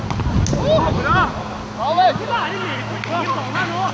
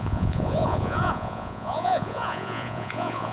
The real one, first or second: first